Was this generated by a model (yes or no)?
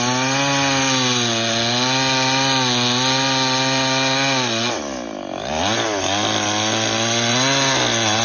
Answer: no